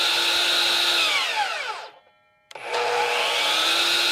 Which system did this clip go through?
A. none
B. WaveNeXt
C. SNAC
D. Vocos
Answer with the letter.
A